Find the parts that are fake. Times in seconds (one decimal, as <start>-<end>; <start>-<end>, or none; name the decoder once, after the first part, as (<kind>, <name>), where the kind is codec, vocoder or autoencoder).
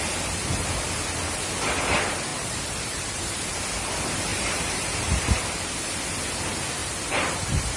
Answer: 2.3-3.5 (vocoder, BigVGAN v2); 4.3-5.4; 6.8-7.8